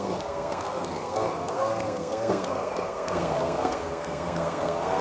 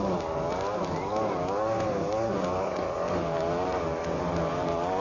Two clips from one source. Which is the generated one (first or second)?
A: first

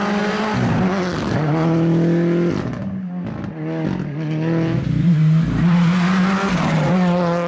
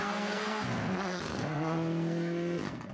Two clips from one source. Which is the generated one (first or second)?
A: second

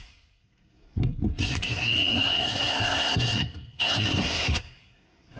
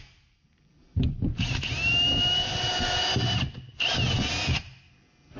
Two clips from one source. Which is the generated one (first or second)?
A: first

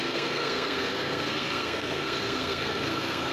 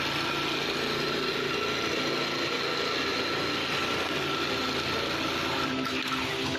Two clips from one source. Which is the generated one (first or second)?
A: first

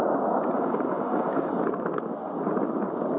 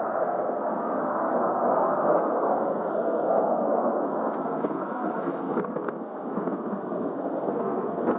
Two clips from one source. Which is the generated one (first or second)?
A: second